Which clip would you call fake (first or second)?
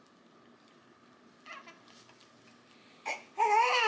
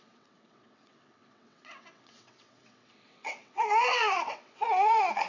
second